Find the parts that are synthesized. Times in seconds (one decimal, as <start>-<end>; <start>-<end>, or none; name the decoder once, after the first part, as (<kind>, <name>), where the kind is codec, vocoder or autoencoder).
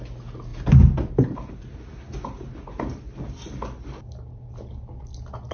none